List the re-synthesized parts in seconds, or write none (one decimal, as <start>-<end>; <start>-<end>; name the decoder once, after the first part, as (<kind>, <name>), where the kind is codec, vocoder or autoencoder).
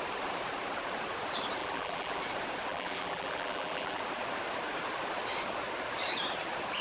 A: 1.6-2.2 (vocoder, BigVGAN v2); 2.7-4.0